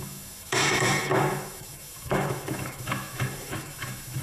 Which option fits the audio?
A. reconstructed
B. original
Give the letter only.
A